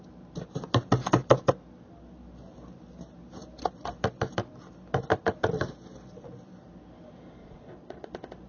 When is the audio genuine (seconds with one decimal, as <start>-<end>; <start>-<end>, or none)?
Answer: 0.0-7.4; 8.1-8.5